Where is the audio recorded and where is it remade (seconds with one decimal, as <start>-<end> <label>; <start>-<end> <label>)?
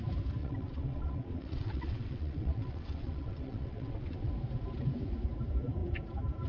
0.0-0.4 recorded; 0.4-4.3 remade; 4.3-6.5 recorded